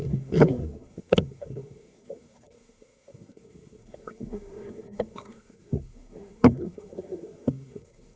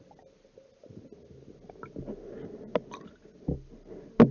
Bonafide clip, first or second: second